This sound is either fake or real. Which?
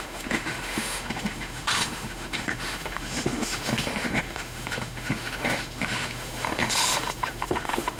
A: fake